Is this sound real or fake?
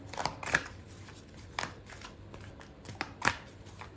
real